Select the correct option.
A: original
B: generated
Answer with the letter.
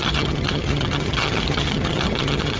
B